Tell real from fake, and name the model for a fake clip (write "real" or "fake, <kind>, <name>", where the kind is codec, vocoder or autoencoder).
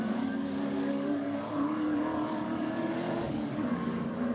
fake, codec, DAC